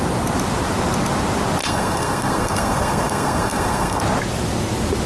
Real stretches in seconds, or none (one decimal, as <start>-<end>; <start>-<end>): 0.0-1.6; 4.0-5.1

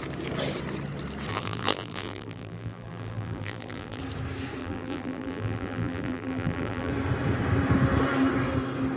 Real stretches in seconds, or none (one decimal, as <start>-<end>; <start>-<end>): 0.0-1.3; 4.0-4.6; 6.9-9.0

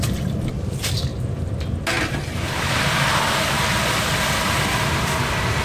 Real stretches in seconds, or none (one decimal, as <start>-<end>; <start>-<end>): 1.1-4.4

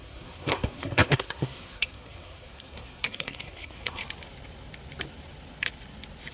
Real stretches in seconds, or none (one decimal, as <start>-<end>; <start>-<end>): 4.0-6.3

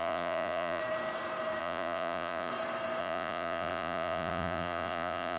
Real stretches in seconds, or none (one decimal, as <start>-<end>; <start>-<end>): 0.8-1.6; 2.5-3.0